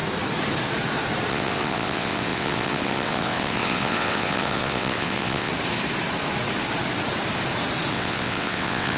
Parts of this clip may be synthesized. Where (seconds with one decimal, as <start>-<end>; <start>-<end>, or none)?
1.3-5.5; 7.9-9.0